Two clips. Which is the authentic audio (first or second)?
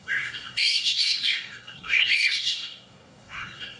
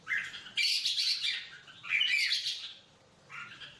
second